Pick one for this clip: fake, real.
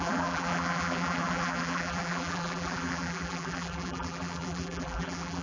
fake